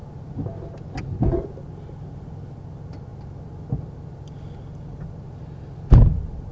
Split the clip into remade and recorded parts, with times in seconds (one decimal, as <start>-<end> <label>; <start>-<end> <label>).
0.0-6.5 recorded